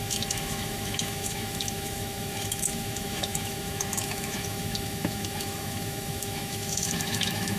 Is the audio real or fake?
fake